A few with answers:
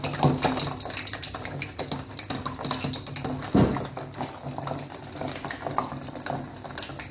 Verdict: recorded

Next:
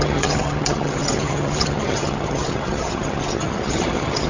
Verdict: remade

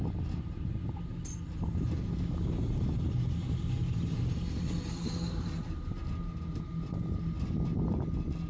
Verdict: recorded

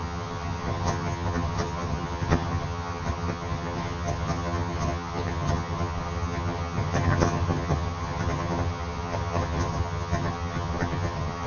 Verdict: remade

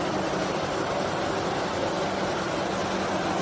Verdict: recorded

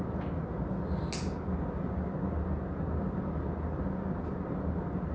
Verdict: recorded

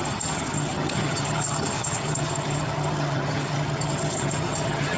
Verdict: remade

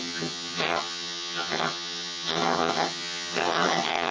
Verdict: remade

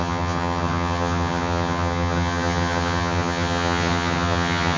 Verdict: remade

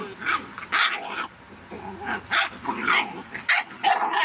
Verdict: recorded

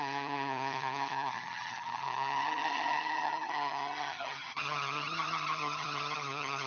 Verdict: remade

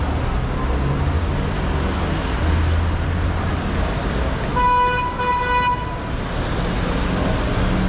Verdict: recorded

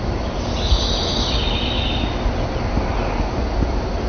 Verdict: recorded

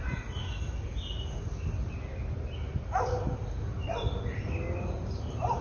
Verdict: recorded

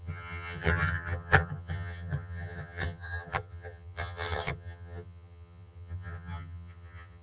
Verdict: remade